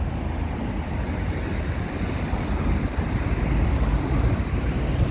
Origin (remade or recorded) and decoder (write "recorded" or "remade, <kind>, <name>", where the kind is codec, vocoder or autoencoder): recorded